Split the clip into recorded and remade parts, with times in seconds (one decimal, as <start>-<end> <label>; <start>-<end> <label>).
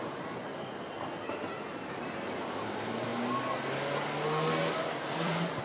0.0-0.5 remade; 0.5-1.8 recorded; 1.8-3.1 remade; 3.1-5.1 recorded; 5.1-5.6 remade